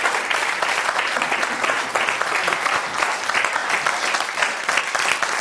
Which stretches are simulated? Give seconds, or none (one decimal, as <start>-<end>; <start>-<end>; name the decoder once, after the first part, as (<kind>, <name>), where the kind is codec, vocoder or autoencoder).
none